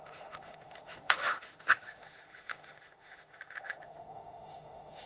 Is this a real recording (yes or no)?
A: no